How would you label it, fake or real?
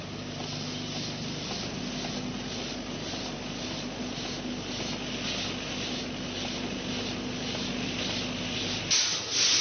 real